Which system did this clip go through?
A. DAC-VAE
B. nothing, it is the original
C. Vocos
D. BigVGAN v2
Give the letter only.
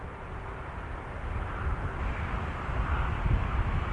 B